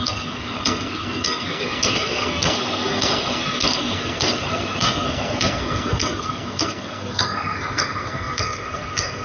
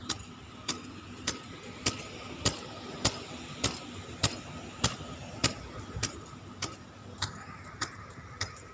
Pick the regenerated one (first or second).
first